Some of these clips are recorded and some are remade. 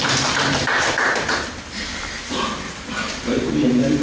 remade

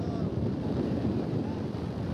remade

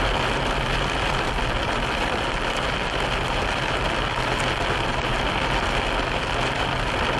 recorded